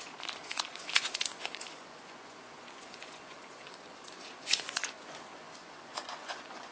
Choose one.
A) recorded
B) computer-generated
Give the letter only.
B